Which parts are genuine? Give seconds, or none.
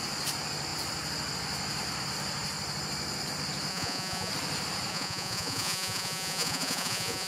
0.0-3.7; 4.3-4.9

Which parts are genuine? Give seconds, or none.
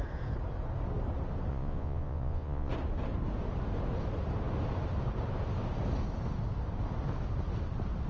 0.0-1.5; 2.7-8.1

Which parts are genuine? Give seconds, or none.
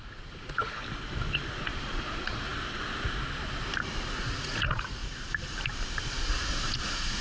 0.8-1.7; 2.5-4.2; 5.0-6.1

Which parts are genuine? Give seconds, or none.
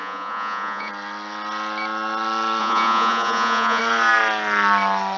0.9-2.6; 3.8-5.2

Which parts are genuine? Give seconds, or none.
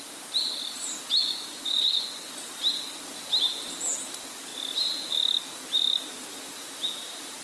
0.0-1.2; 2.3-7.4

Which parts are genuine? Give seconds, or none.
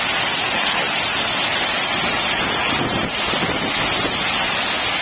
0.0-5.0